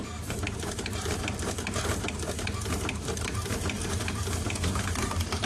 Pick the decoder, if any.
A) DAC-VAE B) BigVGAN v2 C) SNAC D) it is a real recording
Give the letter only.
D